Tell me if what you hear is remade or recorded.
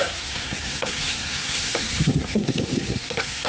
remade